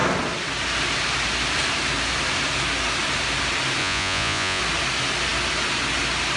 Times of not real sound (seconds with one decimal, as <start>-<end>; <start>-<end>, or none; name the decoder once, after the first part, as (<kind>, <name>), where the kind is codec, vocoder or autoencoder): 3.8-4.6 (vocoder, Vocos)